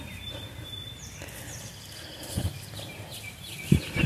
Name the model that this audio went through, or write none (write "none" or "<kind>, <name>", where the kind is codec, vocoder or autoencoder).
none